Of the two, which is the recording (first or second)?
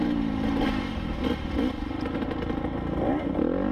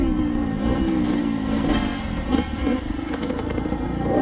first